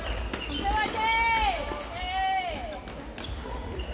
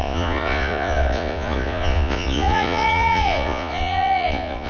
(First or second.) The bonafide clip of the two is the first